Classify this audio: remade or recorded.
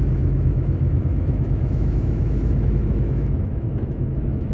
remade